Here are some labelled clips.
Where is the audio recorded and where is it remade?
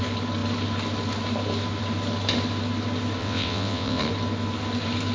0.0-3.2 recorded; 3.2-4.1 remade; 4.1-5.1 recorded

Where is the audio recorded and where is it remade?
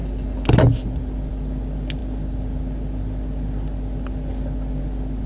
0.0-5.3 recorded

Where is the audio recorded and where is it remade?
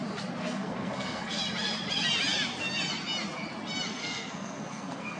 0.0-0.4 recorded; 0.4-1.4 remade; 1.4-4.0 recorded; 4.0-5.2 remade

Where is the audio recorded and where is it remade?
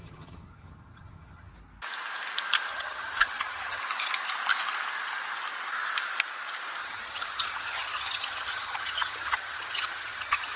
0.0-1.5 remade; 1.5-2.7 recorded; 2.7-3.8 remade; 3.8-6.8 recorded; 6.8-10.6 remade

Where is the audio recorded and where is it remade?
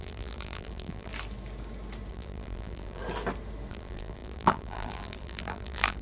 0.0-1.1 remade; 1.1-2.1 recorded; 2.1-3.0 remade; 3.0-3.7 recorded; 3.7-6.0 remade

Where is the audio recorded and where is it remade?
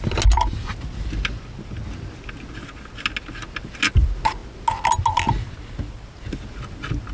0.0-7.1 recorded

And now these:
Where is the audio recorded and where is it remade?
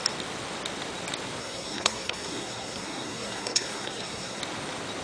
0.0-1.4 recorded; 1.4-4.4 remade; 4.4-5.0 recorded